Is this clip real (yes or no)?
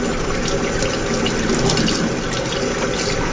yes